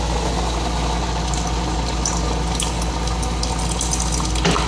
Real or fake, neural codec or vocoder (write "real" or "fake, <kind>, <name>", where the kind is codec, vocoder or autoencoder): real